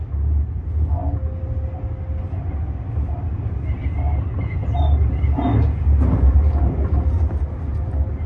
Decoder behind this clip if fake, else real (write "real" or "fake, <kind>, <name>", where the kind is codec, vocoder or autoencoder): real